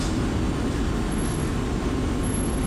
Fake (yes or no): no